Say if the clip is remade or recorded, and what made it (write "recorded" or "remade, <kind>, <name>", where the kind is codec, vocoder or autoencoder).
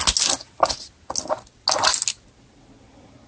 recorded